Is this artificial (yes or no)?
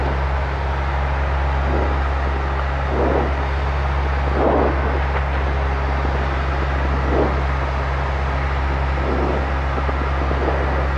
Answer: no